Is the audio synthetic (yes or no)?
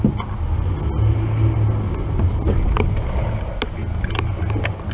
no